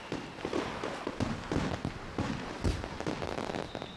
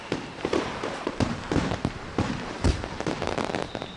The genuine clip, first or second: first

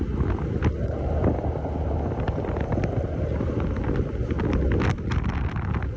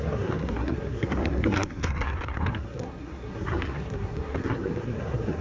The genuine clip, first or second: first